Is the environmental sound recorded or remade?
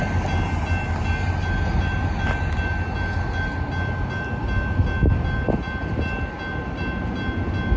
recorded